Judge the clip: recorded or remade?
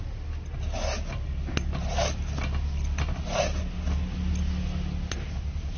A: recorded